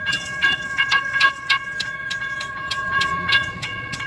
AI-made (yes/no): yes